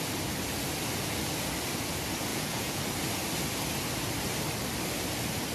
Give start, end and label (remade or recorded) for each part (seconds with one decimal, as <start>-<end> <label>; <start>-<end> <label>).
0.0-2.3 recorded; 2.3-2.8 remade; 2.8-5.5 recorded